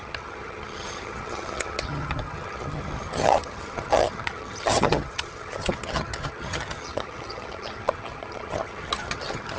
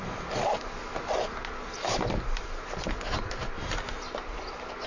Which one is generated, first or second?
first